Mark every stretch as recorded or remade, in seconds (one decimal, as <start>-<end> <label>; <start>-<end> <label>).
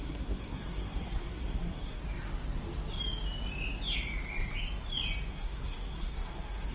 0.0-2.0 remade; 2.0-5.3 recorded; 5.3-6.7 remade